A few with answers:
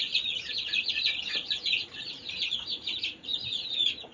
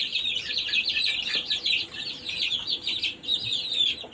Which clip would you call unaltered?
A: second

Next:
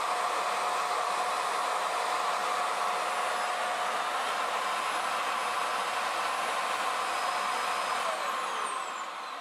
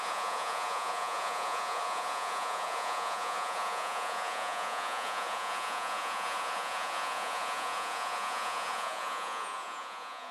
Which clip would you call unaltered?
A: first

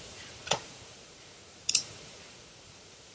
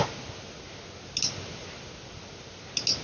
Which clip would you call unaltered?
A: second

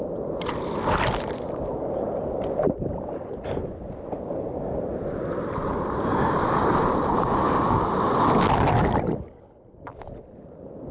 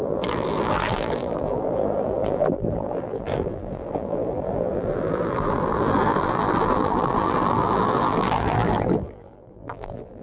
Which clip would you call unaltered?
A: first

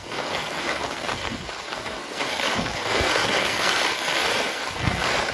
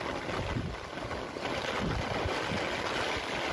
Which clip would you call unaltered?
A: second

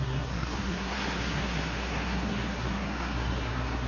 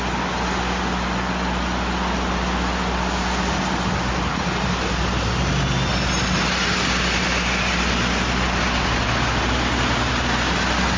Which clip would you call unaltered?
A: second